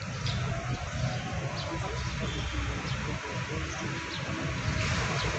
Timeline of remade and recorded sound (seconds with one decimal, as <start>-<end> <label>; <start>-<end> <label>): 0.0-5.4 recorded

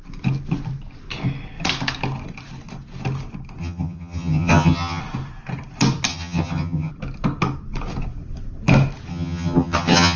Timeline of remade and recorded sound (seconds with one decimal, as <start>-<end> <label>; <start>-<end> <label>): 0.0-3.6 recorded; 3.6-5.0 remade; 5.0-6.1 recorded; 6.1-6.9 remade; 6.9-9.1 recorded; 9.1-10.2 remade

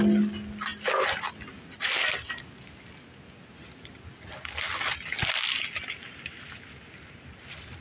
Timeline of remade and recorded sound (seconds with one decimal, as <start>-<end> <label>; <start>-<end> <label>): 0.0-7.8 recorded

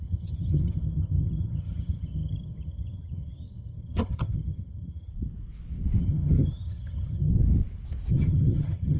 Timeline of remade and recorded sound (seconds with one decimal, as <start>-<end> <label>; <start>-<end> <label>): 0.0-5.1 remade; 5.1-6.0 recorded; 6.0-7.3 remade; 7.3-8.1 recorded; 8.1-9.0 remade

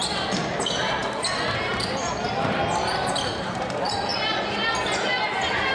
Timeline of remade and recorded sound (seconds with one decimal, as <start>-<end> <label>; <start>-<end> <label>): 0.0-5.7 recorded

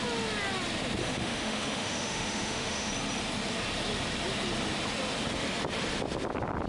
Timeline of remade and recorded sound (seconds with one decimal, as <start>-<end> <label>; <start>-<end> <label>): 0.0-1.0 recorded; 1.0-2.9 remade; 2.9-6.7 recorded